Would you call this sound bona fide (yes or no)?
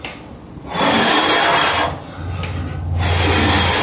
yes